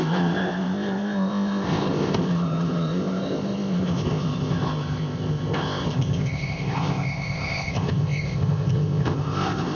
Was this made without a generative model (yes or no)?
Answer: no